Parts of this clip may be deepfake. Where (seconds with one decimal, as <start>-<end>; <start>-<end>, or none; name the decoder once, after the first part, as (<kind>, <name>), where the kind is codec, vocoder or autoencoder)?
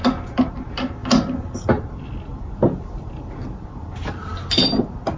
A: none